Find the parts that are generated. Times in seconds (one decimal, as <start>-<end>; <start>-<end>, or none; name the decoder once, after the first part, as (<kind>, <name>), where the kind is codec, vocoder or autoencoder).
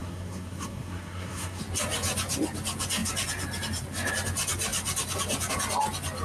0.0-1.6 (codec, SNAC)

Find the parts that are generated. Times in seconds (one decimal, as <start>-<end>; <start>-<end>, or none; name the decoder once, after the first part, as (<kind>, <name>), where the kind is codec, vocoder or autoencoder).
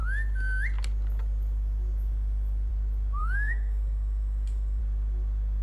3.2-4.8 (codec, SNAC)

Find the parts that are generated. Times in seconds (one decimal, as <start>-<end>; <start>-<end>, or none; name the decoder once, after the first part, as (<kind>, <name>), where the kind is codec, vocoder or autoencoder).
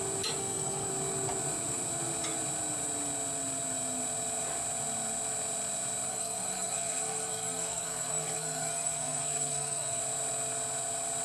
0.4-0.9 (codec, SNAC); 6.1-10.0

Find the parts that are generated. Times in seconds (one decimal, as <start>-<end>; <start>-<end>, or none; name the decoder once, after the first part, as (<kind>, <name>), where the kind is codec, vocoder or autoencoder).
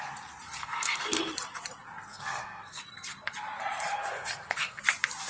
0.6-1.3 (codec, SNAC); 2.1-2.8; 4.0-4.8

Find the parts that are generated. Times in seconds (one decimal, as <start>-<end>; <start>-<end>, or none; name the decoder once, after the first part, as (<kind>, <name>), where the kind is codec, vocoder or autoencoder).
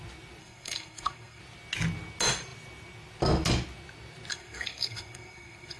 0.4-1.4 (codec, SNAC); 4.3-5.8